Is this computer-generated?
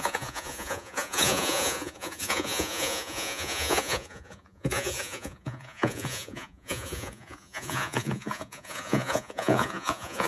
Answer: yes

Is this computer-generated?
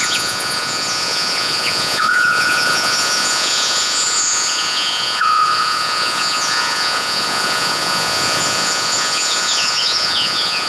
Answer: yes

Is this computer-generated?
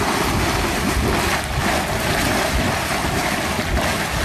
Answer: no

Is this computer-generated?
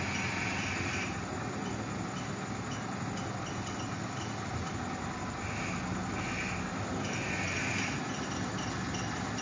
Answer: no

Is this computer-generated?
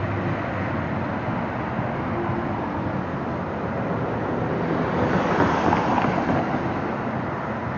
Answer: no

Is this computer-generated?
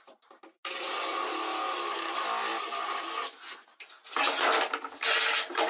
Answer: no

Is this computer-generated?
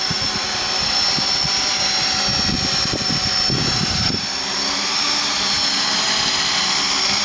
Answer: no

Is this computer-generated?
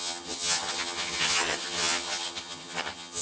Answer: yes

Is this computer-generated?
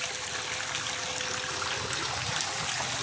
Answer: no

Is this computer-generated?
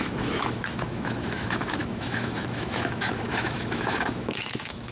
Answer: yes